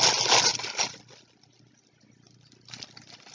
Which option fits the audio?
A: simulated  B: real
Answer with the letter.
B